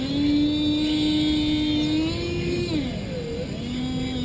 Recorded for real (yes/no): yes